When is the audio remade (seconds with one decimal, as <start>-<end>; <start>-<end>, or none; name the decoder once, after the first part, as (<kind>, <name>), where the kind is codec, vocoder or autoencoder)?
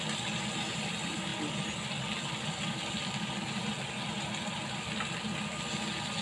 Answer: none